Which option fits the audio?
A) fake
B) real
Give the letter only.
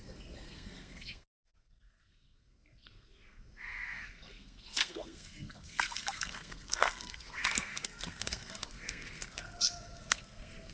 A